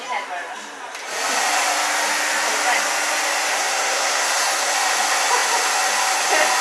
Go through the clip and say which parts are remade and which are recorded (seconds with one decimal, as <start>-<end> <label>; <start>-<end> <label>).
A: 0.0-3.5 recorded; 3.5-4.7 remade; 4.7-6.6 recorded